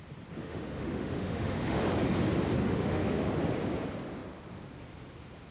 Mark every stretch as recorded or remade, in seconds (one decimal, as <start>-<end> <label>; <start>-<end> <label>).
0.0-0.4 recorded; 0.4-1.8 remade; 1.8-2.6 recorded; 2.6-3.3 remade; 3.3-5.5 recorded